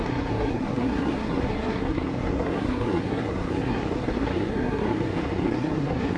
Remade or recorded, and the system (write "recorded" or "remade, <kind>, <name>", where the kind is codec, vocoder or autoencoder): remade, codec, SNAC